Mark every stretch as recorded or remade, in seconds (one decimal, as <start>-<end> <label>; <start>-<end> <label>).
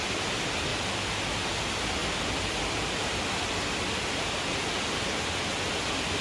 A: 0.0-6.2 recorded